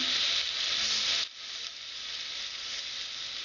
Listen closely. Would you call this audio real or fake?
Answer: real